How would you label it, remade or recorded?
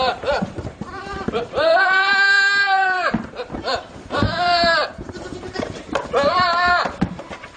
remade